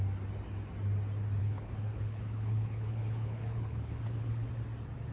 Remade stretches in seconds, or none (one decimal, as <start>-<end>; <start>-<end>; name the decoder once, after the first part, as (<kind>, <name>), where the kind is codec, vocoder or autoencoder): 1.4-4.5 (codec, HILCodec)